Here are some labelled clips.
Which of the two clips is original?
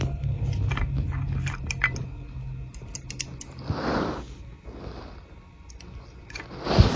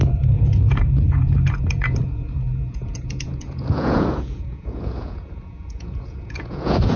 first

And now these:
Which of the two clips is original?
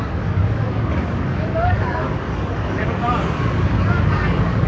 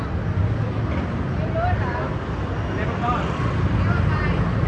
second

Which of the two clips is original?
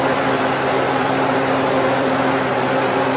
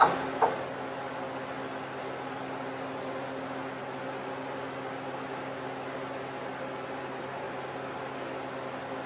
second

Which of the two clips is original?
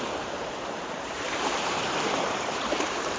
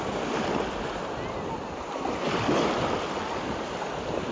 second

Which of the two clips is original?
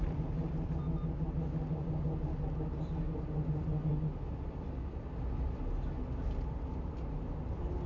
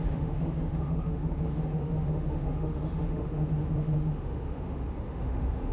first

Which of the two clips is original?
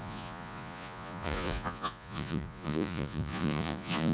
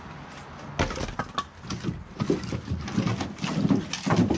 second